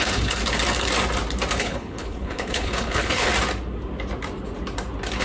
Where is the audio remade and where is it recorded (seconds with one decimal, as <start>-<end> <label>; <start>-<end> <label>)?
0.0-0.4 remade; 0.4-1.6 recorded; 1.6-3.3 remade; 3.3-5.2 recorded